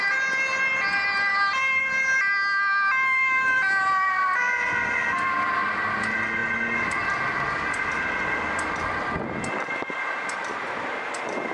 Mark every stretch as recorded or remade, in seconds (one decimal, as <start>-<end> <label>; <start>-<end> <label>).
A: 0.0-11.5 recorded